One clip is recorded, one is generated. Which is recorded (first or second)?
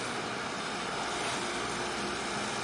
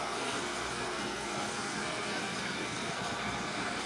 first